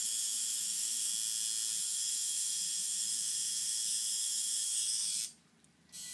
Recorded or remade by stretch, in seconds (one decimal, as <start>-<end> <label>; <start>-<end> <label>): 0.0-1.1 remade; 1.1-1.8 recorded; 1.8-5.2 remade; 5.2-6.1 recorded